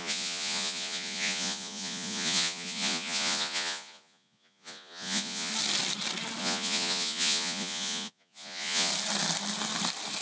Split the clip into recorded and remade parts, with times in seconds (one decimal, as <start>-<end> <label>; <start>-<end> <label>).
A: 0.0-5.5 remade; 5.5-6.4 recorded; 6.4-8.9 remade; 8.9-10.2 recorded